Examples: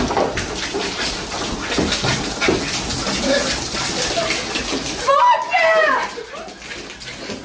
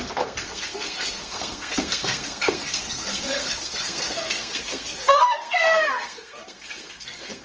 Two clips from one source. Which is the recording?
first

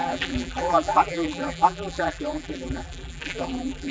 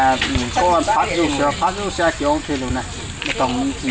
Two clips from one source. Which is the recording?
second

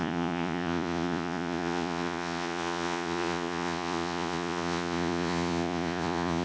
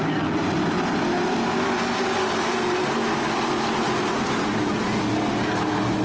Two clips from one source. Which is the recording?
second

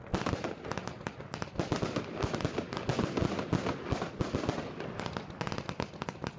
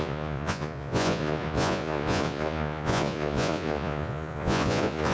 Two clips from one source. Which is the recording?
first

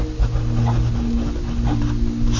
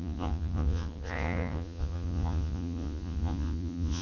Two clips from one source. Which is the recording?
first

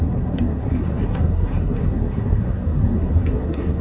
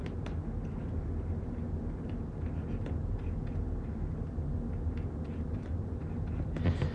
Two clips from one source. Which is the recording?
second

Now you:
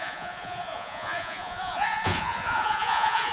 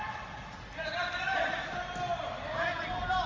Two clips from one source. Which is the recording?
second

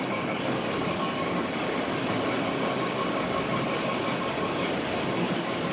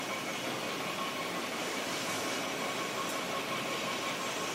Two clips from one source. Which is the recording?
second